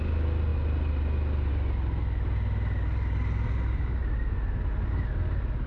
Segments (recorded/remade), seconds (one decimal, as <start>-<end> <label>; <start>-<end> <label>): 0.0-5.7 recorded